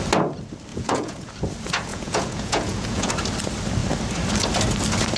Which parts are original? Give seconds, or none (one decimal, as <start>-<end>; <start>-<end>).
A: 0.0-0.7; 1.3-1.9; 3.1-5.2